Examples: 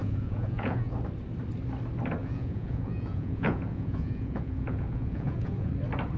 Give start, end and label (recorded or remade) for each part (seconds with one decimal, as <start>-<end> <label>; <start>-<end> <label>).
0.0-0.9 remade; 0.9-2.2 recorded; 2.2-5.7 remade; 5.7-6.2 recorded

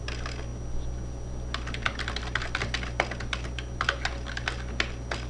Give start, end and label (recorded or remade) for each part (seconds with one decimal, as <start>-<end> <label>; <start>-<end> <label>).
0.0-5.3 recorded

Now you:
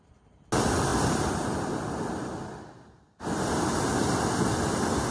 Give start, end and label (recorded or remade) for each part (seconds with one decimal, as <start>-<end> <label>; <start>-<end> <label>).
0.0-5.1 recorded

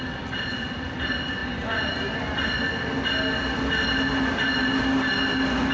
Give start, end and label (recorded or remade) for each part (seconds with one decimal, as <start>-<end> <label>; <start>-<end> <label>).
0.0-5.7 recorded